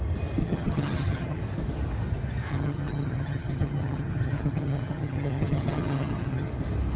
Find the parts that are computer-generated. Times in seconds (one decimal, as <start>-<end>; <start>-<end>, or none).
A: 0.4-1.4; 2.5-6.5